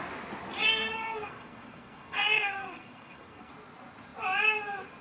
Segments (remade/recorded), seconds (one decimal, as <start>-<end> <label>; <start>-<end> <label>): 0.0-0.6 recorded; 0.6-3.5 remade; 3.5-5.0 recorded